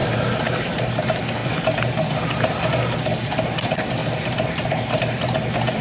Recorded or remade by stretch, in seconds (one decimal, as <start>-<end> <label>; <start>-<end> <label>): 0.0-0.8 remade; 0.8-4.0 recorded; 4.0-5.0 remade; 5.0-5.8 recorded